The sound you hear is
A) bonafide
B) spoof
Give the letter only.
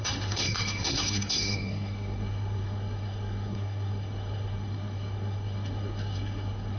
B